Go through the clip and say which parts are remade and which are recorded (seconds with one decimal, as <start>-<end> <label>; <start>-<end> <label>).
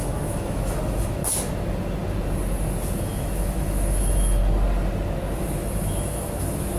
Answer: 0.0-1.2 remade; 1.2-2.9 recorded; 2.9-4.4 remade; 4.4-5.3 recorded; 5.3-6.8 remade